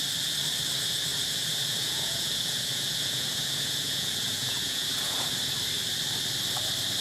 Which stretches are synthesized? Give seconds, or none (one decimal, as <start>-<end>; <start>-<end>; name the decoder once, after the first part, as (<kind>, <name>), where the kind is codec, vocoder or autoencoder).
1.1-5.3 (vocoder, Vocos)